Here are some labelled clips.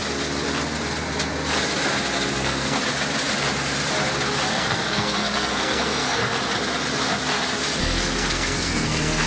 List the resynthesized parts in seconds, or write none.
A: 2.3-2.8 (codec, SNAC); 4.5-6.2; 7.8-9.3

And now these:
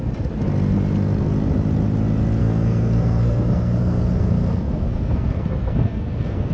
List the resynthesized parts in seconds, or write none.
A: 2.4-6.5 (codec, SNAC)

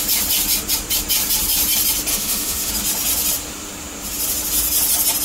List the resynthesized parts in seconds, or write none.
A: 2.1-2.7 (autoencoder, DAC-VAE)